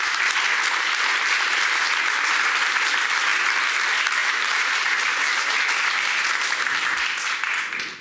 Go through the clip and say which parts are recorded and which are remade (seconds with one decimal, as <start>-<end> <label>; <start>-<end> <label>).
0.0-4.2 recorded; 4.2-5.5 remade; 5.5-8.0 recorded